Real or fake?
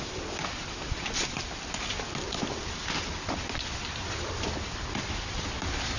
real